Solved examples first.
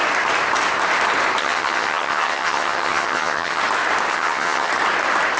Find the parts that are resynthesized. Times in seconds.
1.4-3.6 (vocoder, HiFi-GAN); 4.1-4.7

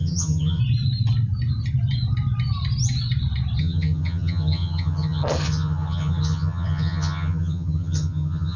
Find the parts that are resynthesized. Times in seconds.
0.0-0.6 (vocoder, HiFi-GAN); 3.6-8.6

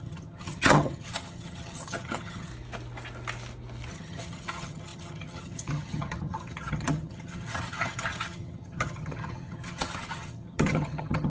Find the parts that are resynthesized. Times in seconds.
0.0-2.5 (vocoder, HiFi-GAN); 3.9-11.3

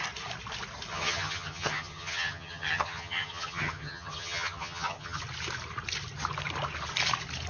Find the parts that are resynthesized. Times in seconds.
0.9-5.2 (vocoder, HiFi-GAN)

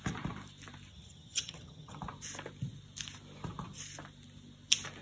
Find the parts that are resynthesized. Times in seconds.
0.9-2.0 (vocoder, HiFi-GAN)

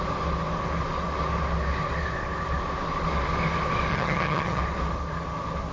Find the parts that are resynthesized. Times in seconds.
3.9-4.6 (vocoder, HiFi-GAN)

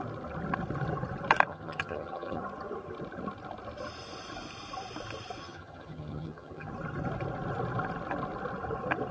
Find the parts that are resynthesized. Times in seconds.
1.5-2.4 (vocoder, HiFi-GAN); 5.4-6.7

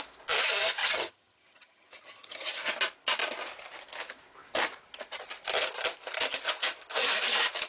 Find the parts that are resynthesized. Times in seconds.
0.8-2.6 (vocoder, HiFi-GAN)